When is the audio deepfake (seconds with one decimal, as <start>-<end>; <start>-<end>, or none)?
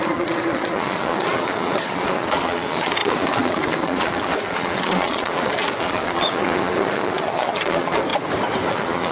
0.0-8.1; 8.7-9.1